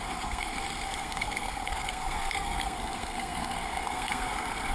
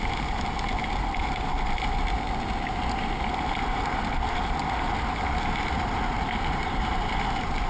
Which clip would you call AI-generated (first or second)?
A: first